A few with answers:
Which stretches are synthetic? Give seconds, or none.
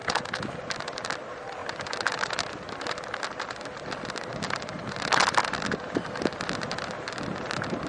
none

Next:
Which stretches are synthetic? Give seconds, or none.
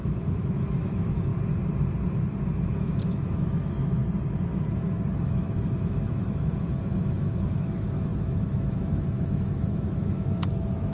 0.0-1.3 (autoencoder, DAC-VAE); 2.7-4.0; 5.2-10.9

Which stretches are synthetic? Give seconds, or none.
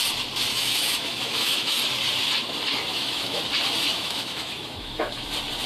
0.5-1.8 (autoencoder, DAC-VAE); 2.9-3.4; 3.9-5.3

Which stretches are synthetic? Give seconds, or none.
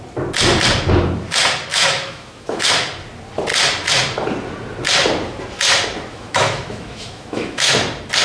1.7-2.7 (autoencoder, DAC-VAE); 6.1-7.7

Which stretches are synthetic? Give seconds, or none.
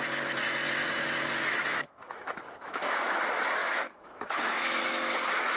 0.8-3.2 (autoencoder, DAC-VAE); 3.6-5.6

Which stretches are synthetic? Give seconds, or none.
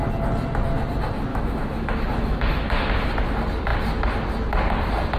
1.3-2.9 (autoencoder, DAC-VAE)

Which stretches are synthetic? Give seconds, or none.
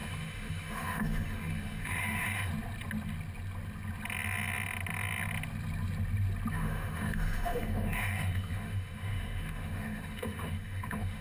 0.0-2.5 (autoencoder, DAC-VAE); 6.5-11.2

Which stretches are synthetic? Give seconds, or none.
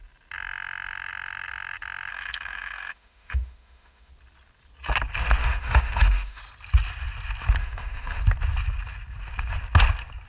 2.1-4.1 (autoencoder, DAC-VAE); 5.4-6.4; 7.6-8.2